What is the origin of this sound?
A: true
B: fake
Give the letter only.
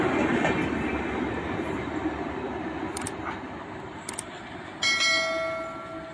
A